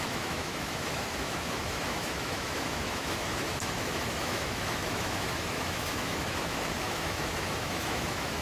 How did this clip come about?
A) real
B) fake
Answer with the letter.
B